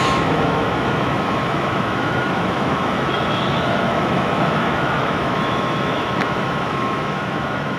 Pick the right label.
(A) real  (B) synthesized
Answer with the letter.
B